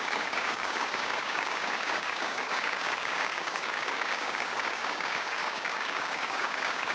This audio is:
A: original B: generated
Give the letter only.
B